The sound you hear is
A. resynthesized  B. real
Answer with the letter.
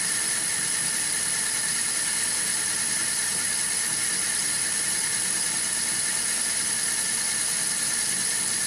B